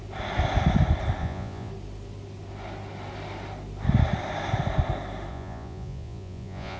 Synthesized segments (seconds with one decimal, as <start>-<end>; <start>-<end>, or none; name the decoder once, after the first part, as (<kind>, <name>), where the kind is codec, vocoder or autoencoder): 1.2-1.7 (vocoder, Vocos); 5.3-6.8